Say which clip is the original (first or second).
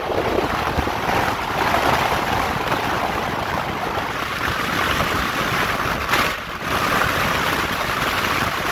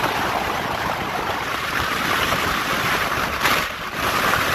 first